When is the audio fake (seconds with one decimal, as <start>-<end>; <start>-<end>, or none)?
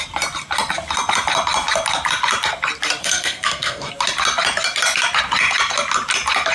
3.0-3.9